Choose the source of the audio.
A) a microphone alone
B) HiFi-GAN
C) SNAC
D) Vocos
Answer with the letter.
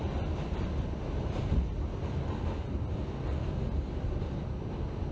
A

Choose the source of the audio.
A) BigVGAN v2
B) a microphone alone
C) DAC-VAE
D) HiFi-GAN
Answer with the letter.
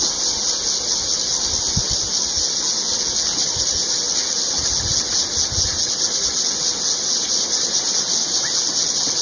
B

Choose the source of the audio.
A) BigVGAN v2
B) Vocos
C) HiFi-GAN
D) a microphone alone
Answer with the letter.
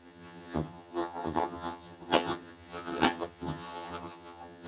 C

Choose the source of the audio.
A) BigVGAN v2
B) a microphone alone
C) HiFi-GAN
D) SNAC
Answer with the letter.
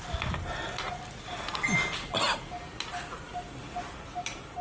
B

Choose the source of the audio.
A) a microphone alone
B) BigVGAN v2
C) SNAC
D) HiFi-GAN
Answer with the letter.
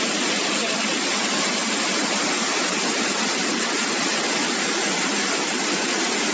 A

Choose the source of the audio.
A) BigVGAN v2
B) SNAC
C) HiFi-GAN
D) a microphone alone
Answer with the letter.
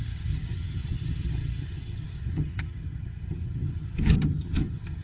C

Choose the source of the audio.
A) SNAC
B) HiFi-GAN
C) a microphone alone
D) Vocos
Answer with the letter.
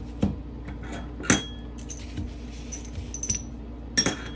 C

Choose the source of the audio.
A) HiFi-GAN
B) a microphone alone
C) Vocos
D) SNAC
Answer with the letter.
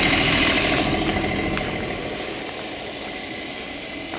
B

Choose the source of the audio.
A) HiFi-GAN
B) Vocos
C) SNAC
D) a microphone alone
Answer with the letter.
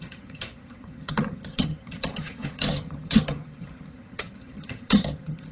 A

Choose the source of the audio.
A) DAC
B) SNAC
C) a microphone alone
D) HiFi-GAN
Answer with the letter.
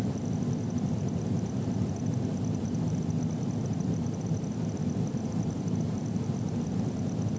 C